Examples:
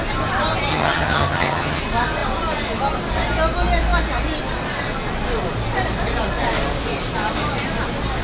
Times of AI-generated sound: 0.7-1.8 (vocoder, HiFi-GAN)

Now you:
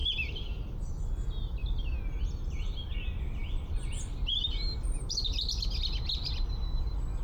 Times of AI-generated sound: 0.0-0.9 (vocoder, BigVGAN v2)

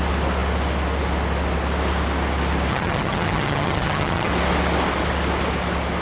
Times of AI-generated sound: 2.7-4.3 (vocoder, HiFi-GAN)

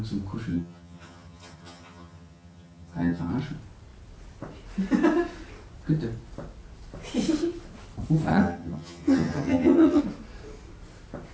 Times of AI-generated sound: 0.5-3.3 (vocoder, HiFi-GAN); 8.3-10.0

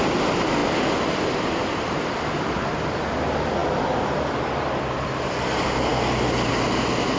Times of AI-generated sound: none